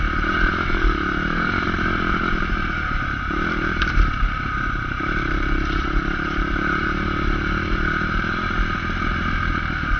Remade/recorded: remade